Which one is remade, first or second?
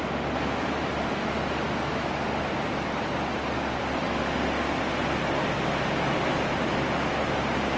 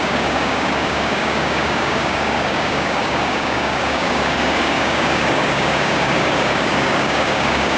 second